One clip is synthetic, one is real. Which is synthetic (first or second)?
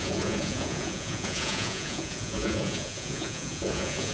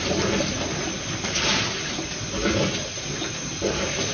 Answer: first